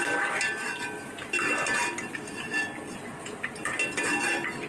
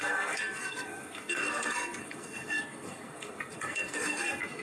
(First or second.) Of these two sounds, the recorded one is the first